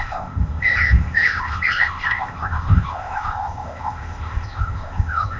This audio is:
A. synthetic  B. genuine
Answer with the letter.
A